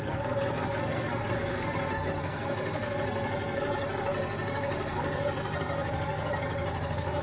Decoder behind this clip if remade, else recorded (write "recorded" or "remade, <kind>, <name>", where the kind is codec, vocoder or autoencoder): remade, codec, SNAC